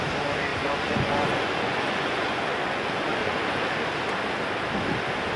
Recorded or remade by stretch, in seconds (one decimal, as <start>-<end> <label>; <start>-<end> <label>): 0.0-0.5 recorded; 0.5-3.7 remade; 3.7-5.4 recorded